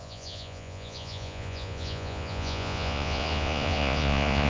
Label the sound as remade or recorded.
remade